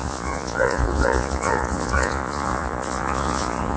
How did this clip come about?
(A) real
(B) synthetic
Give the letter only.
B